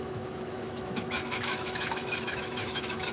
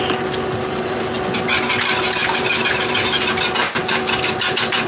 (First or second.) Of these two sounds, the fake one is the first